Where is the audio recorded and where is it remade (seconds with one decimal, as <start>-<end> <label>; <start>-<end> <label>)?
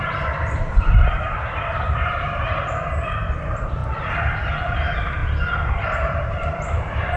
0.0-3.8 remade; 3.8-4.6 recorded; 4.6-5.2 remade; 5.2-5.8 recorded; 5.8-7.2 remade